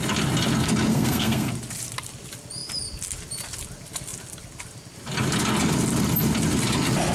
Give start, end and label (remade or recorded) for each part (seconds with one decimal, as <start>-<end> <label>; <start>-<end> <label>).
0.0-0.9 recorded; 0.9-1.5 remade; 1.5-7.1 recorded